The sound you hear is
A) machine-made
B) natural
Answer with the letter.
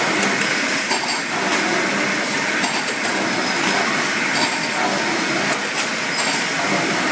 B